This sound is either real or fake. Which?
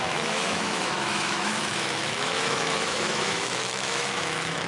fake